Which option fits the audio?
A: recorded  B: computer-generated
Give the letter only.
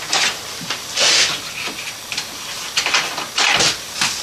A